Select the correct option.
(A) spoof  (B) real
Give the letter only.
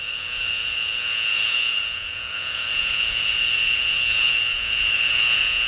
A